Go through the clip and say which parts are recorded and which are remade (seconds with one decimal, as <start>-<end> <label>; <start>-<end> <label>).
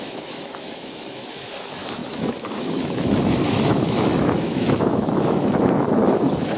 0.0-6.6 remade